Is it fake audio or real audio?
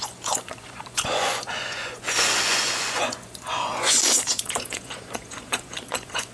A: fake